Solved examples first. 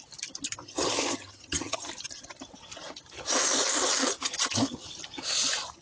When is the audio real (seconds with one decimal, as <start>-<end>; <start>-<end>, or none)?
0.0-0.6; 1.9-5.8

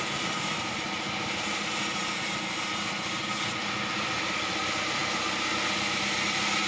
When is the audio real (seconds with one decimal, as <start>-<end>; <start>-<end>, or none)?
0.0-6.7

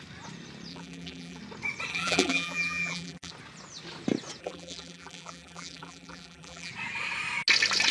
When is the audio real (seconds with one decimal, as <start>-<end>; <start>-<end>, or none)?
0.0-0.7; 1.4-1.9; 3.3-4.4; 6.7-7.9